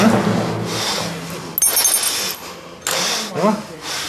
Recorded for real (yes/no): yes